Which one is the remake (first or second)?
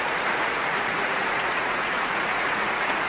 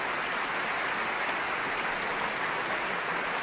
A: first